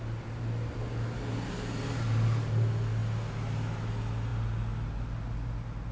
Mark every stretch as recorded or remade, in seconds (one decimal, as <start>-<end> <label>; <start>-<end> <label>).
0.0-5.9 recorded